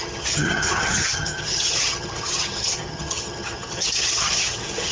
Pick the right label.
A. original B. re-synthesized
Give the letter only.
B